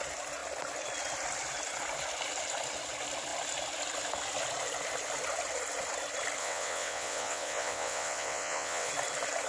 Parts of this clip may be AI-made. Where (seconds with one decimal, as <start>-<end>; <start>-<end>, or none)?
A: 6.4-8.9